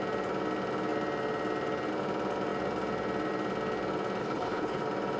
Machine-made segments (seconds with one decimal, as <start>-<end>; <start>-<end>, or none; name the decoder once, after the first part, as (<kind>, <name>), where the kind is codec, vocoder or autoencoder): 4.2-4.8 (codec, HILCodec)